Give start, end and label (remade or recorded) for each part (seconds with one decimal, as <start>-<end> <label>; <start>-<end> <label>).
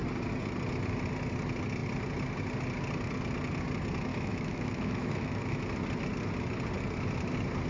0.0-4.1 recorded; 4.1-5.6 remade; 5.6-7.7 recorded